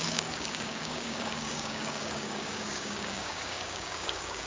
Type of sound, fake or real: fake